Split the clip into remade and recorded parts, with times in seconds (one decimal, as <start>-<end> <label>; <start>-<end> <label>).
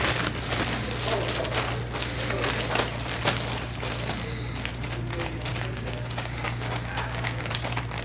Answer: 0.0-5.5 recorded; 5.5-7.5 remade; 7.5-8.0 recorded